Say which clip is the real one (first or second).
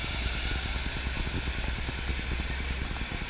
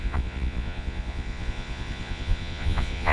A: first